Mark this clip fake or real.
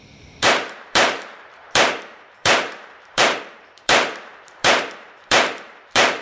fake